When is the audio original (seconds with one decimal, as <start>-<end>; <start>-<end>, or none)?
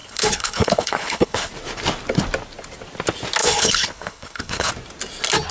1.5-3.4; 4.7-5.5